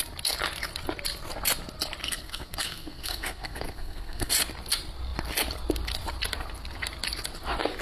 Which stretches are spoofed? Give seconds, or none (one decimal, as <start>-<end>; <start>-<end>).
2.0-4.3